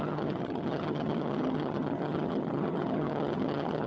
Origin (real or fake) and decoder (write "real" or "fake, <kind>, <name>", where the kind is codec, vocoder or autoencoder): fake, vocoder, HiFi-GAN